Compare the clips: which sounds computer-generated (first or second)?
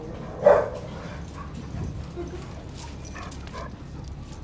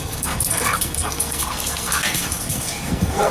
second